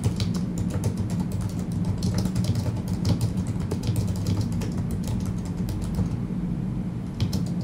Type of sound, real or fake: real